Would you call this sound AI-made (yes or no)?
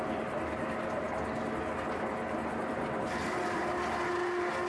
no